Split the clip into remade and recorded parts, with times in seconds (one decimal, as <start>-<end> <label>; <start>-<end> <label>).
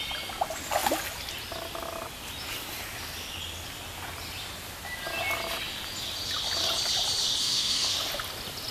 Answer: 0.0-7.4 recorded; 7.4-8.1 remade; 8.1-8.7 recorded